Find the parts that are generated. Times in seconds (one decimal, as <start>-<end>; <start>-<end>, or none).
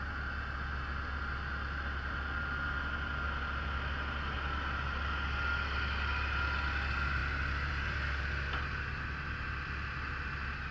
none